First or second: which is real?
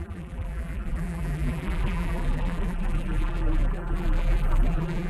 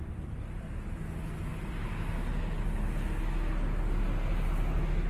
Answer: second